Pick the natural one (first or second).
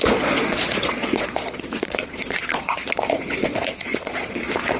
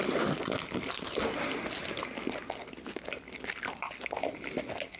second